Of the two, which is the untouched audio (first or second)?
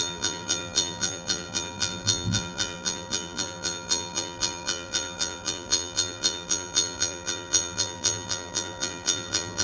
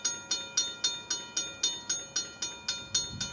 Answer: second